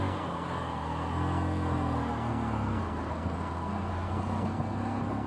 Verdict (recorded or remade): remade